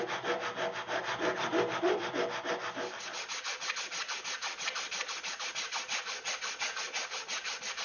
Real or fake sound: real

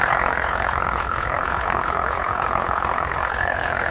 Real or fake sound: fake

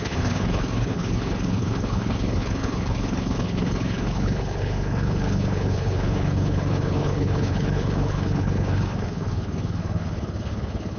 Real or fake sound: fake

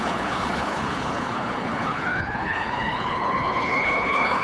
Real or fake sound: fake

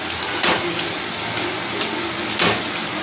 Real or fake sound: real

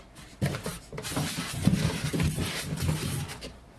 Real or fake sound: real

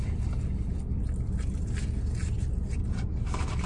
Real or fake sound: real